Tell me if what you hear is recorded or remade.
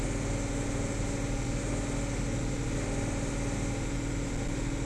recorded